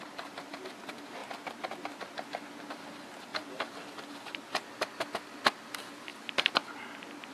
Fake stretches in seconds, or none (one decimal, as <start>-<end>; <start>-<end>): 0.0-1.2; 2.6-4.6; 5.5-6.1